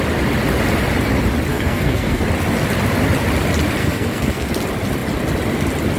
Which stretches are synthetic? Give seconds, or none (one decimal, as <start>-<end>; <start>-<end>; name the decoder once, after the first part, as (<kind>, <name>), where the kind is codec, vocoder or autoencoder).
1.5-2.2 (codec, SNAC); 3.8-4.5